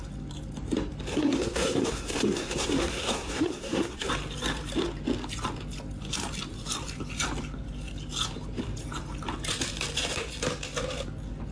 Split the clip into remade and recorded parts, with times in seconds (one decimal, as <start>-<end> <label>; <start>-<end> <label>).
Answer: 0.0-1.1 recorded; 1.1-4.1 remade; 4.1-11.5 recorded